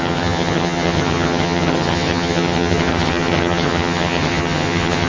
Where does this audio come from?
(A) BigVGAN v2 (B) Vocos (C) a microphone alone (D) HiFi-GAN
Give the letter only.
D